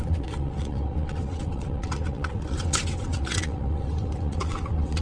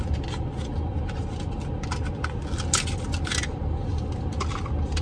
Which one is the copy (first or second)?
first